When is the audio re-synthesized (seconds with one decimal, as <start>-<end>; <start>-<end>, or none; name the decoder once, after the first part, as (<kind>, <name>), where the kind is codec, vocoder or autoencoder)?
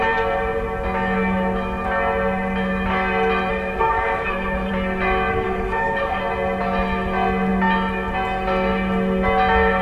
3.5-4.7 (codec, SNAC); 5.3-6.2